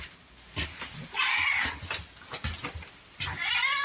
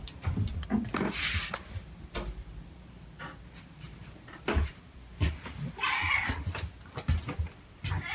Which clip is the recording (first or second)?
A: first